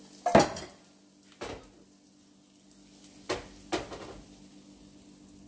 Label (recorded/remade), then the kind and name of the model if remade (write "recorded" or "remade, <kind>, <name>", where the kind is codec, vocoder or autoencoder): recorded